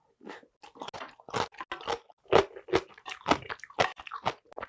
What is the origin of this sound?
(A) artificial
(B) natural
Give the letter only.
B